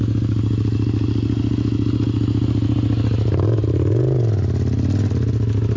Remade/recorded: recorded